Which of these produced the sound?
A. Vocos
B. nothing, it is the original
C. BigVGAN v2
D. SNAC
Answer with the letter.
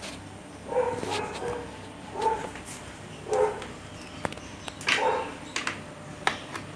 B